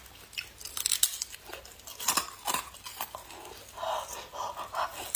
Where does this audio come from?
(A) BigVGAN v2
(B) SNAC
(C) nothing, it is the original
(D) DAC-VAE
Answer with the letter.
C